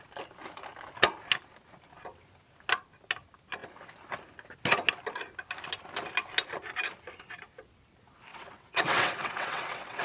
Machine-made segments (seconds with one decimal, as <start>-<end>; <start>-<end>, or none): 8.3-10.0